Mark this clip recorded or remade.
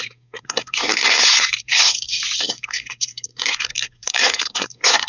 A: remade